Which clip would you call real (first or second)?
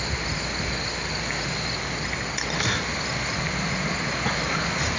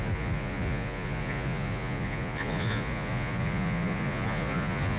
first